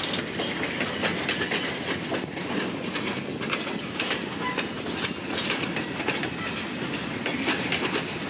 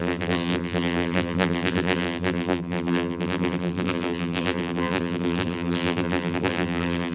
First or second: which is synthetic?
second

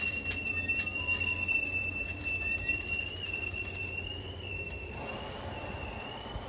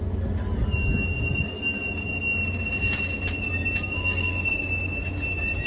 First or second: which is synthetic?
first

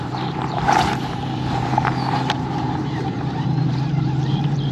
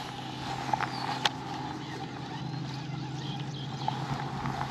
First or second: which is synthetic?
first